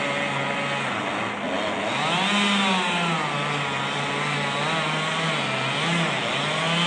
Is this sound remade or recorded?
recorded